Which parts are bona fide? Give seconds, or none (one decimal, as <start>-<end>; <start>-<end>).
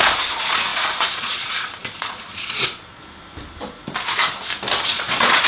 3.0-4.8